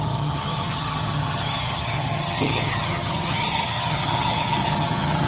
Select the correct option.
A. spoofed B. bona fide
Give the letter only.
A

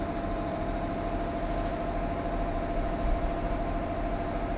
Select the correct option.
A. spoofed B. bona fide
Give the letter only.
B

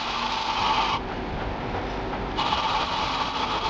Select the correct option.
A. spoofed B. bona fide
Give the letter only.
B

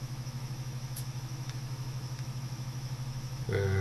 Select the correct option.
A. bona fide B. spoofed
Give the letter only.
B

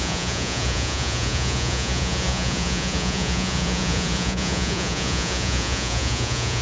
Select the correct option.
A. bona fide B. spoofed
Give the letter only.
B